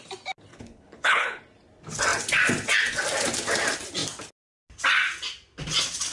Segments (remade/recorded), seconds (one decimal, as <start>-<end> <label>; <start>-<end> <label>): 0.0-0.5 recorded; 0.5-1.4 remade; 1.4-6.1 recorded